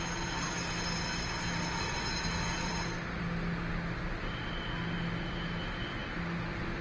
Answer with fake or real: real